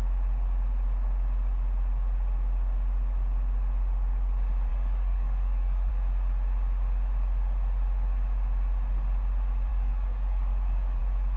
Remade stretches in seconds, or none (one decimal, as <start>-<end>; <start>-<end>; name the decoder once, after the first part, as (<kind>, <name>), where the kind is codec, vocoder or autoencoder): 4.7-5.9 (codec, DAC); 9.7-11.0